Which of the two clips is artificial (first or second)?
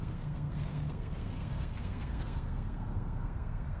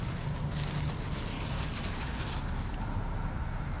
first